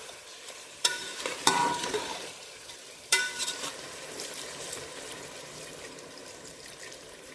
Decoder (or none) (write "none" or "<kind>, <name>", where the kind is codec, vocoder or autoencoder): vocoder, BigVGAN v2